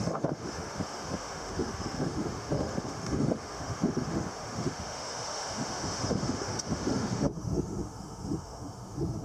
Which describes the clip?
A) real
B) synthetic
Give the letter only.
B